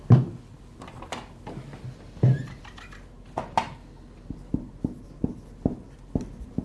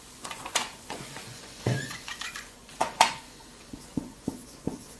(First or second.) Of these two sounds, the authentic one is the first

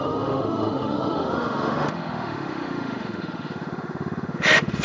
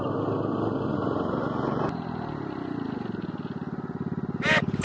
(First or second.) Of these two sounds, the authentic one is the second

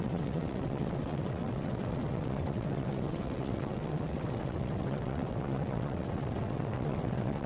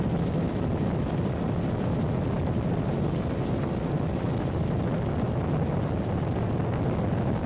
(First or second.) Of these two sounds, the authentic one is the second